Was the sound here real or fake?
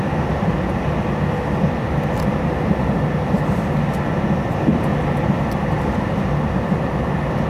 real